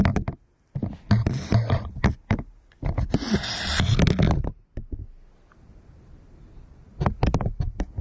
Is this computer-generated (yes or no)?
no